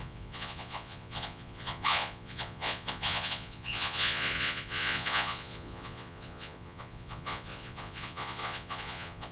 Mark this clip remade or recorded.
remade